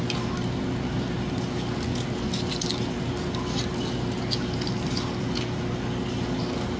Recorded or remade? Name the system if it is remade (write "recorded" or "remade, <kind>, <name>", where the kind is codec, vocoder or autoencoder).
recorded